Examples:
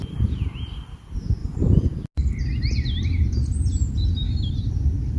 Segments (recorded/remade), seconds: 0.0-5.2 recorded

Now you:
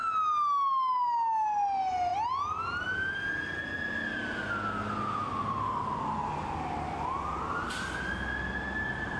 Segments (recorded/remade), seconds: 0.0-9.2 recorded

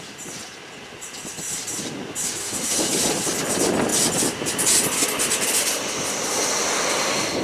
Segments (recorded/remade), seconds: 0.0-2.4 recorded; 2.4-2.9 remade; 2.9-7.4 recorded

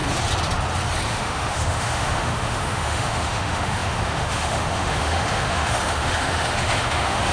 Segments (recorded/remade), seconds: 0.0-1.1 recorded; 1.1-7.3 remade